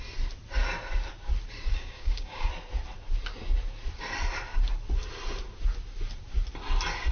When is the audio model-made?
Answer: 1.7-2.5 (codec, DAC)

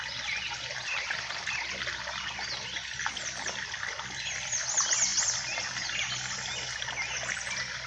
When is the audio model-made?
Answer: none

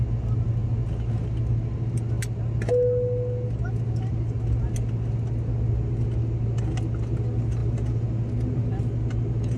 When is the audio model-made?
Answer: none

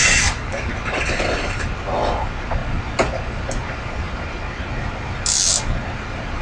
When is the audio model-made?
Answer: 0.0-0.7 (codec, DAC)